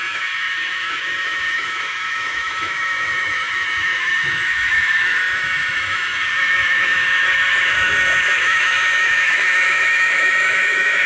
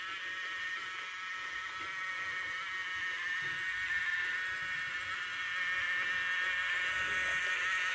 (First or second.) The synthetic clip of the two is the first